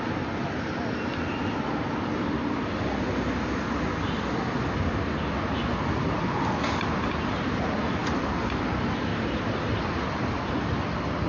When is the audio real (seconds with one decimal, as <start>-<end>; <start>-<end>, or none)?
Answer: 0.0-9.1; 10.5-11.3